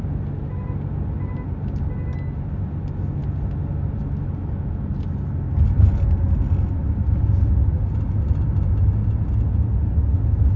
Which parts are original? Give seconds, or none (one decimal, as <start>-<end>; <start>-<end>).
0.0-10.6